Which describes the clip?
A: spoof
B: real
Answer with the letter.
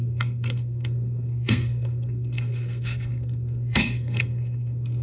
A